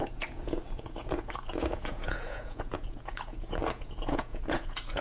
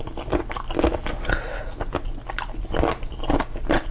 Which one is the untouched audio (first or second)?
second